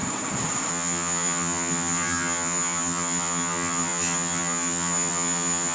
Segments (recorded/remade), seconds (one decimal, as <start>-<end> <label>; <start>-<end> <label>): 0.0-0.7 recorded; 0.7-5.7 remade